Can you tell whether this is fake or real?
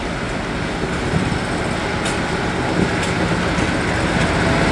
real